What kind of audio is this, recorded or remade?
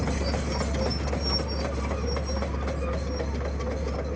recorded